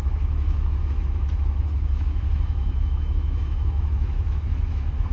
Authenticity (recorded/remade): remade